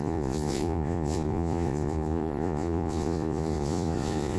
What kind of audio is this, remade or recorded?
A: remade